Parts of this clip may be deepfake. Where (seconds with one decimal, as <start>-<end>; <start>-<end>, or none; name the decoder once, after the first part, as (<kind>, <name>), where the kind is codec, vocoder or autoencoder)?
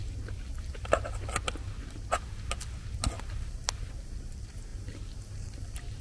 none